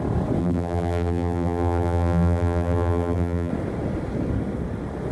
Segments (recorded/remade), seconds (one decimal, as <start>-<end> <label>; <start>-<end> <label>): 0.0-0.4 recorded; 0.4-3.5 remade; 3.5-5.1 recorded